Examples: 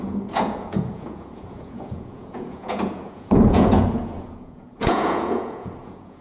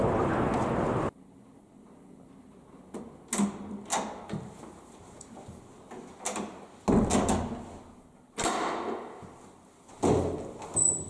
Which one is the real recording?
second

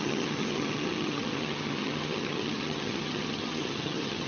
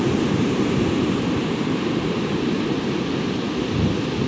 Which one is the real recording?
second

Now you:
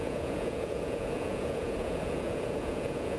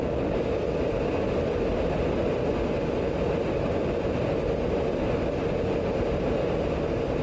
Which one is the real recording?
second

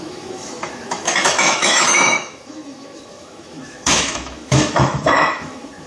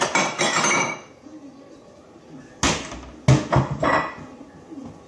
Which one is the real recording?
second